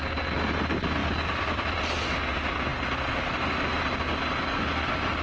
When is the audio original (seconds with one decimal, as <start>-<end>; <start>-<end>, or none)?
0.0-1.0; 1.8-5.2